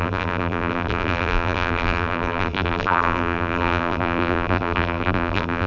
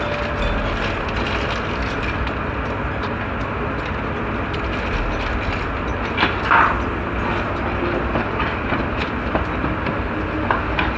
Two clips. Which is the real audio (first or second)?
second